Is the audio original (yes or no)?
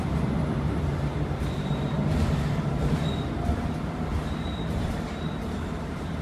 no